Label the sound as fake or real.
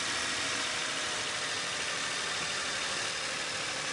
real